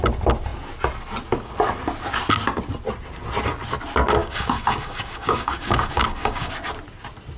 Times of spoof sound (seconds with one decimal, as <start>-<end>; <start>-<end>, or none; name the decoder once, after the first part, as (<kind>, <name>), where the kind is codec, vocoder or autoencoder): 4.2-6.5 (codec, DAC)